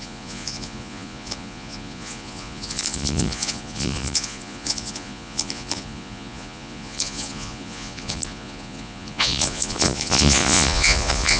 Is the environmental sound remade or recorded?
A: remade